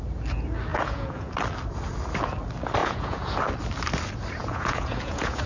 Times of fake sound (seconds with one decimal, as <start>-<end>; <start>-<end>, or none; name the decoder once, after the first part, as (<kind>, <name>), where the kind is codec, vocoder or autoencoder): 0.7-1.3 (vocoder, Vocos); 2.8-3.4; 4.4-5.5